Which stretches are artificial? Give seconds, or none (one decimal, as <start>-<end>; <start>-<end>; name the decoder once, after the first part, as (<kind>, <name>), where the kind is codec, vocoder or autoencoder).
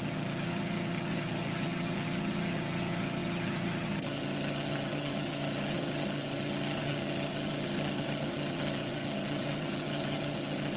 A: 0.0-10.8 (vocoder, HiFi-GAN)